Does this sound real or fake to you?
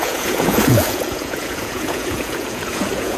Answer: fake